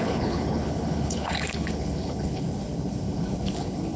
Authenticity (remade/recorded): remade